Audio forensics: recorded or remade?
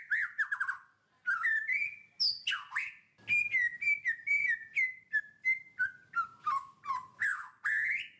recorded